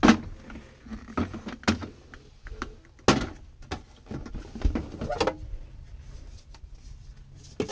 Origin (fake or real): real